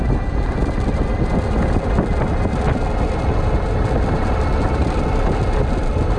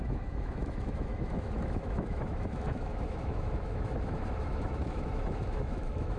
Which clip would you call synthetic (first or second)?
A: second